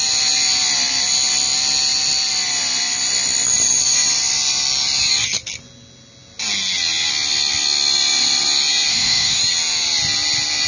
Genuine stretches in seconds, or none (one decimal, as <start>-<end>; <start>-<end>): 0.0-8.9; 9.4-10.7